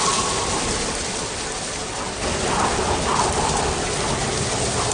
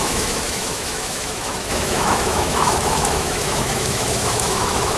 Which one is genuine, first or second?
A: first